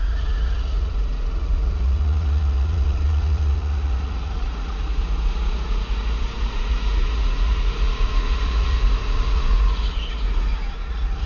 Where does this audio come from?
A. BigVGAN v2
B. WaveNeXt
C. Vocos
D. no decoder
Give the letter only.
C